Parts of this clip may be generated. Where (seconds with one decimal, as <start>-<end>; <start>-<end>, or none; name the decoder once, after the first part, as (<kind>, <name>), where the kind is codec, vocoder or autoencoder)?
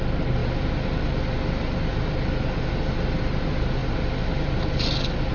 none